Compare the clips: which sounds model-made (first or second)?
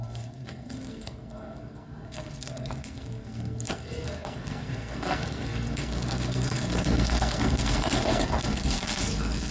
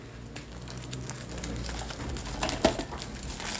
first